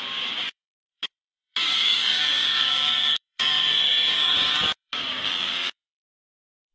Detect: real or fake fake